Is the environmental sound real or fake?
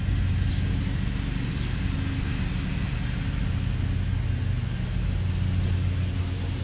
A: real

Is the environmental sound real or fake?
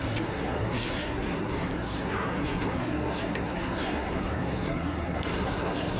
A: fake